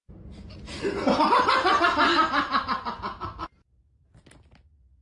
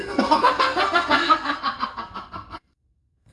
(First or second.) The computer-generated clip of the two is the second